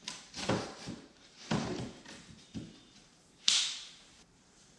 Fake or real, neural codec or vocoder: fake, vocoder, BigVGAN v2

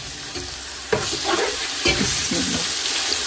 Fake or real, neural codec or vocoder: real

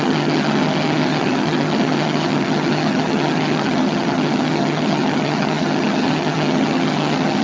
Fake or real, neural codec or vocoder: fake, vocoder, HiFi-GAN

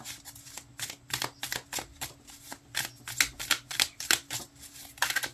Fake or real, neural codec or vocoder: real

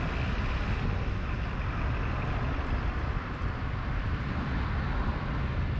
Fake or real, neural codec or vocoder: real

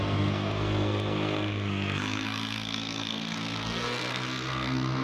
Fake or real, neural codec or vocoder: fake, codec, SNAC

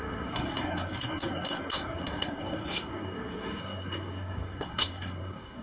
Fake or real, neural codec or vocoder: fake, codec, SNAC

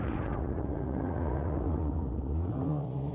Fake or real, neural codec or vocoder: fake, vocoder, Vocos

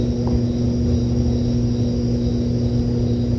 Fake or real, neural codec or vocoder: real